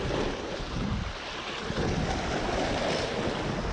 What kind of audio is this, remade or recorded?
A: recorded